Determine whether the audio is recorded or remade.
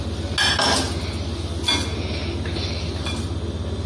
recorded